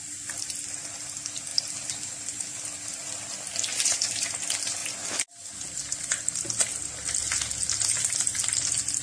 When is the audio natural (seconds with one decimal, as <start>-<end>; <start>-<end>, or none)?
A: 0.0-3.7; 4.3-9.0